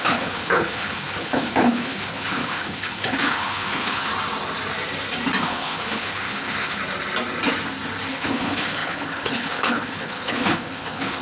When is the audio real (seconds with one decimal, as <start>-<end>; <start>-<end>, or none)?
4.1-5.4; 6.8-8.1